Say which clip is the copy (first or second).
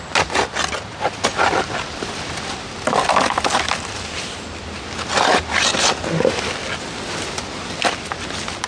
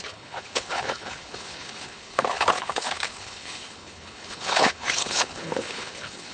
second